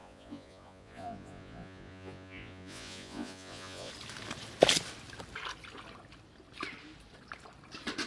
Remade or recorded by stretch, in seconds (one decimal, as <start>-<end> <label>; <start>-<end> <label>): 0.0-3.9 remade; 3.9-8.1 recorded